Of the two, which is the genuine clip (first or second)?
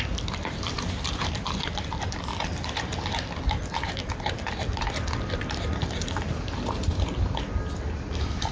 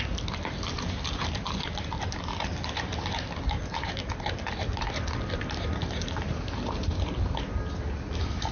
second